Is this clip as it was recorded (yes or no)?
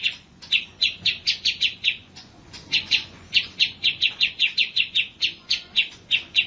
no